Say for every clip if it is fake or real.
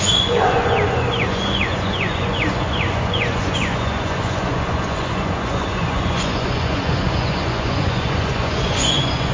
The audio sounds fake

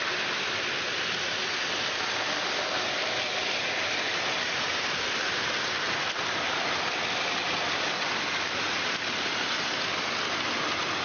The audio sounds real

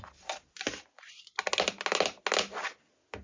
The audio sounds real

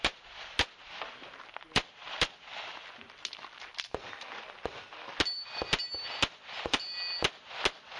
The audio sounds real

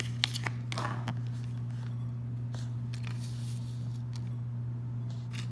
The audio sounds real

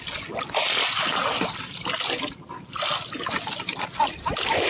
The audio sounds real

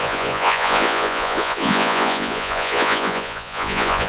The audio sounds fake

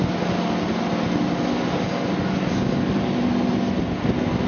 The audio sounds real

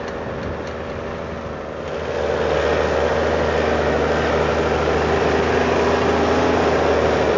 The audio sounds real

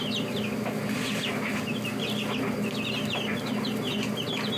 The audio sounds real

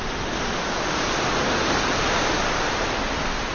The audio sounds real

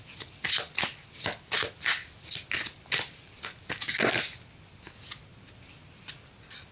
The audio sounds real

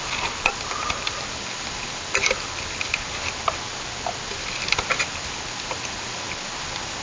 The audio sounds real